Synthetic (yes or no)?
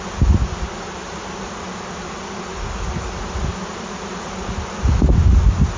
no